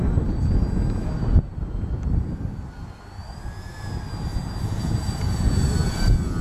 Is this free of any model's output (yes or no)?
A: yes